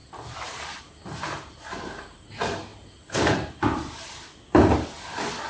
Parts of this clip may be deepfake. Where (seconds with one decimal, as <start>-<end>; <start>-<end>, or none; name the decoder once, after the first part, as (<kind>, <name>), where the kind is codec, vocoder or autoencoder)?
none